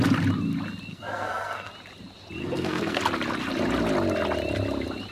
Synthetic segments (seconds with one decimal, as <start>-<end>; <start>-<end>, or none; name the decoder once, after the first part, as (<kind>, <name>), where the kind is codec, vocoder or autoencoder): 0.9-1.7 (codec, SNAC); 2.4-3.0